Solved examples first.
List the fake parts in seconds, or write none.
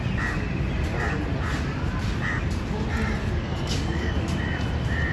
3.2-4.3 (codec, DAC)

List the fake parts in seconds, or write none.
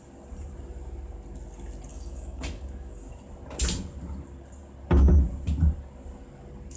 1.9-3.1 (codec, DAC)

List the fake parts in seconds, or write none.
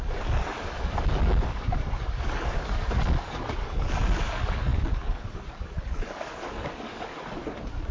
0.0-7.9 (codec, DAC)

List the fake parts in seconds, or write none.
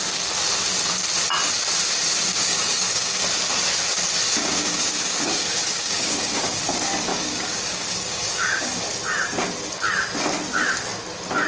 2.3-3.2 (codec, DAC); 4.4-6.6; 7.1-8.8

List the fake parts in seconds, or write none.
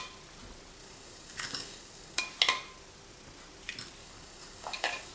0.8-2.2 (codec, DAC); 4.0-5.1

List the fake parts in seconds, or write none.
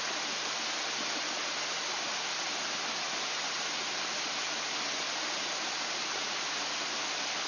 none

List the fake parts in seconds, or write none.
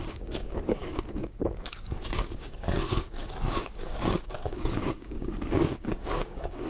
0.0-6.7 (codec, DAC)